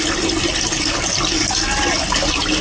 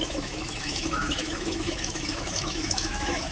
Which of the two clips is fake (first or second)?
second